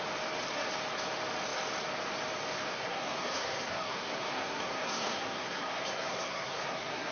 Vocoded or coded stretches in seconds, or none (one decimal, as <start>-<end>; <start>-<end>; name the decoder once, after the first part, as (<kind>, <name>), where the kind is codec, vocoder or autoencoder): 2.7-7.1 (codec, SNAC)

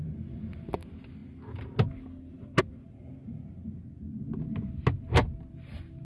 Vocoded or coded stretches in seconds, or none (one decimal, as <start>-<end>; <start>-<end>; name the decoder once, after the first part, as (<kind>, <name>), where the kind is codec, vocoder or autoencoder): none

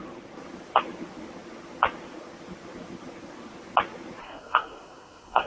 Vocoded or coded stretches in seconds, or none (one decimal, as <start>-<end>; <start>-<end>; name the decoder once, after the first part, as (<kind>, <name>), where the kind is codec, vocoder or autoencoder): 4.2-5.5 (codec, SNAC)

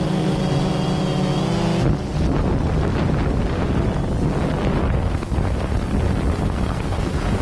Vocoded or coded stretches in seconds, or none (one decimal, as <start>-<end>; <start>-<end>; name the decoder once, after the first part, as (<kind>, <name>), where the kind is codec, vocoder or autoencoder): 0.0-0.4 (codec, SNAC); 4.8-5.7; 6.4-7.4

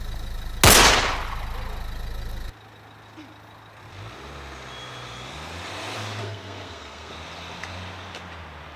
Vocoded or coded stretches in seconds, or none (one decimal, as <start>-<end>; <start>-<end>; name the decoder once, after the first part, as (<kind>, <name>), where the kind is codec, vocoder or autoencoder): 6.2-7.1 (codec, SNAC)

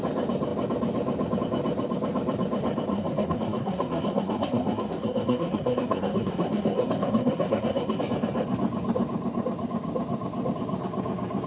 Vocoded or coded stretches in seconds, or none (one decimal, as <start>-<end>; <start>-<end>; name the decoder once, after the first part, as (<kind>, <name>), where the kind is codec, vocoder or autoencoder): 2.9-8.0 (codec, SNAC)

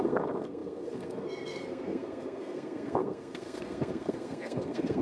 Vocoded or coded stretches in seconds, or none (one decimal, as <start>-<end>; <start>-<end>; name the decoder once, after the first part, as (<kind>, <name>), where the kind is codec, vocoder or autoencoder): 0.0-5.0 (codec, SNAC)